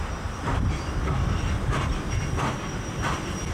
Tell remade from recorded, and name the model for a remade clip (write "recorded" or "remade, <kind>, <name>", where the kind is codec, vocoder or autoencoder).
recorded